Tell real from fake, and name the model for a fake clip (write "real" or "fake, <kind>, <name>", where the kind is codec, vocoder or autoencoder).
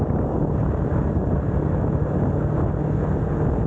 real